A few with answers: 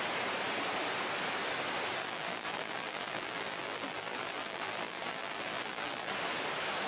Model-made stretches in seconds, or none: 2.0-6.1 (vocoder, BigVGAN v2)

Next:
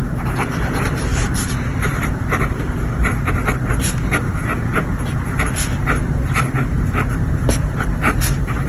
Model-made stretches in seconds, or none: 0.6-8.7 (vocoder, BigVGAN v2)

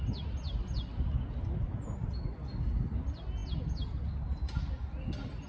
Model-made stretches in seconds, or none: none

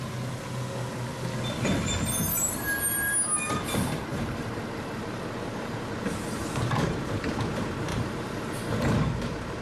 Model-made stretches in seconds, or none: 4.1-5.9 (vocoder, BigVGAN v2); 7.9-8.5

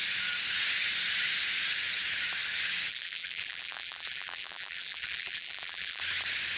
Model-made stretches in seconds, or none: 2.9-6.0 (vocoder, BigVGAN v2)

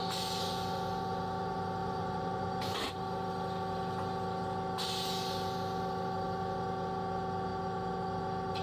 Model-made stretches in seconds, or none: 1.8-2.9 (vocoder, BigVGAN v2)

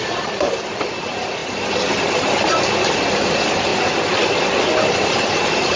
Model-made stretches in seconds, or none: 0.0-1.4 (vocoder, BigVGAN v2); 3.0-3.7; 5.1-5.8

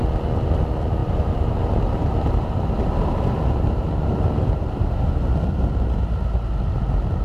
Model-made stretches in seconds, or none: 1.0-4.9 (vocoder, BigVGAN v2)